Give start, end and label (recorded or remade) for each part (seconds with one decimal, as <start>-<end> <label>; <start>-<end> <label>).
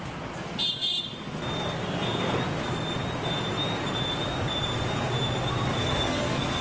0.0-5.8 recorded; 5.8-6.6 remade